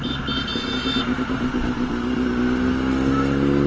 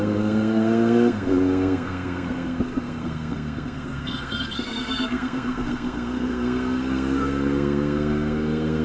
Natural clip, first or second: first